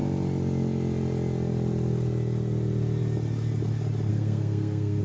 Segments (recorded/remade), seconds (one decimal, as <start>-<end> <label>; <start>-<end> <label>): 0.0-4.1 recorded; 4.1-5.0 remade